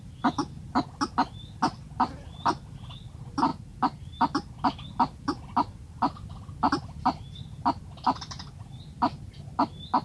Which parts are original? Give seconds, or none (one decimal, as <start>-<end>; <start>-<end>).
none